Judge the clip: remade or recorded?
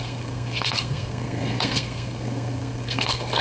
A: remade